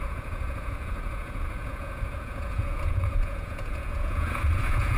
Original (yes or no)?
no